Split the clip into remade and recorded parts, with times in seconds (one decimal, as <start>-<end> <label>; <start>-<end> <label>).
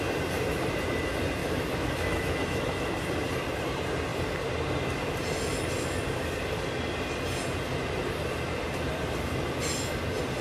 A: 0.0-1.4 recorded; 1.4-2.9 remade; 2.9-10.4 recorded